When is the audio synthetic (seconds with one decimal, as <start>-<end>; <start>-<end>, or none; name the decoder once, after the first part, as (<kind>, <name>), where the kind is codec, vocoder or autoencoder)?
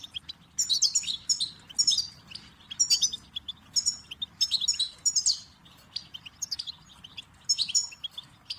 none